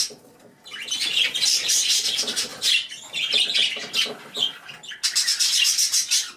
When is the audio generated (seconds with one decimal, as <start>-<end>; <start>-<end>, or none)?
none